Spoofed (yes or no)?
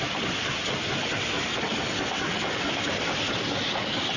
no